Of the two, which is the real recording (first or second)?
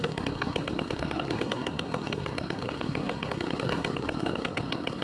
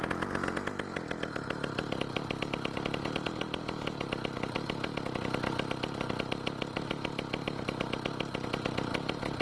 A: second